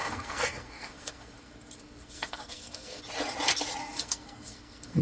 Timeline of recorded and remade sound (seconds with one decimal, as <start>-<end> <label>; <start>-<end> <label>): 0.0-3.0 remade; 3.0-3.8 recorded; 3.8-5.0 remade